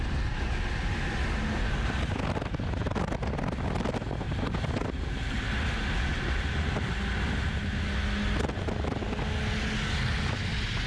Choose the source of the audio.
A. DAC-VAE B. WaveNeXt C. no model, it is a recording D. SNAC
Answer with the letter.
C